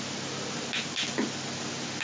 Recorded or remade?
recorded